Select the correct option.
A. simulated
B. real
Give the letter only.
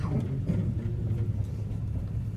B